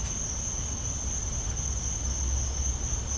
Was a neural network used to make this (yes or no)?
no